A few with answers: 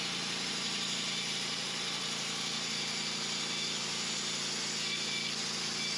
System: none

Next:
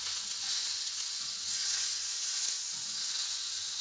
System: vocoder, Vocos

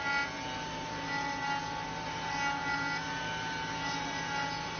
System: none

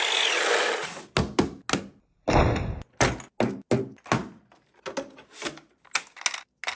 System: none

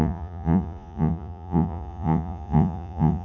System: vocoder, Vocos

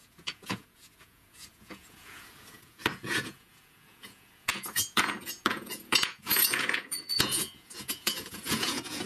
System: vocoder, Vocos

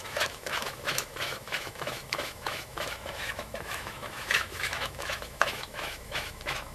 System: autoencoder, DAC-VAE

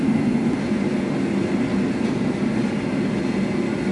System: none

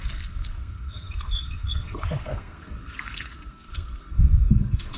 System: codec, SNAC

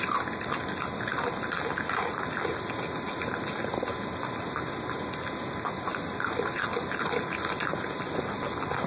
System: none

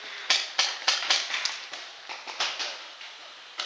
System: none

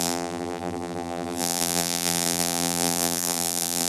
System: vocoder, BigVGAN v2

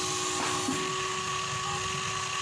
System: none